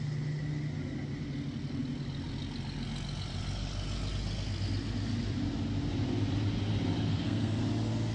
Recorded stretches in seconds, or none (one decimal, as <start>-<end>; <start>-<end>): 0.0-7.1; 7.6-8.1